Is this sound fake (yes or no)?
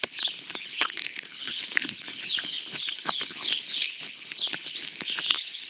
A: yes